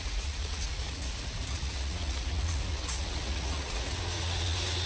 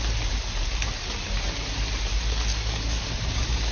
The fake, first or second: first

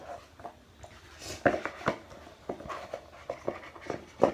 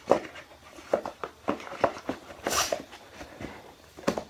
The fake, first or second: second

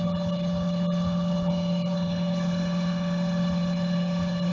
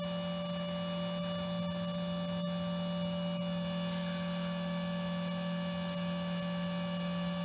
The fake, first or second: first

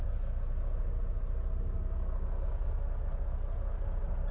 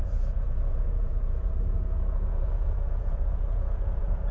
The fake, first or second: second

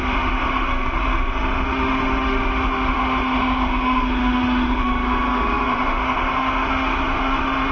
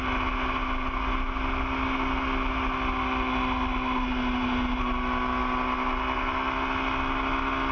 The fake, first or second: first